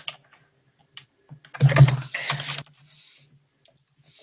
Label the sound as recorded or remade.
recorded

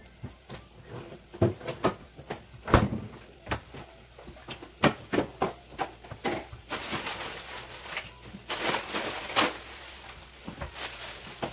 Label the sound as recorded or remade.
recorded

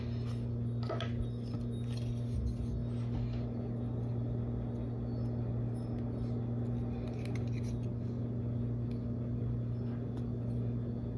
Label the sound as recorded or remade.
recorded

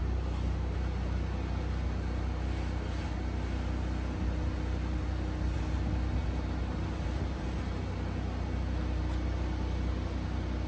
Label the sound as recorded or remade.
recorded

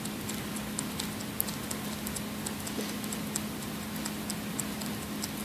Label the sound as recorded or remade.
recorded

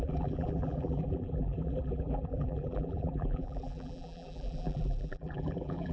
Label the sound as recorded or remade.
remade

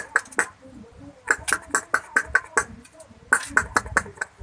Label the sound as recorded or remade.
recorded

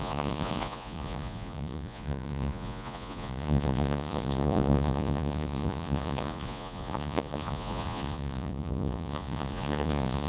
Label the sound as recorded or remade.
remade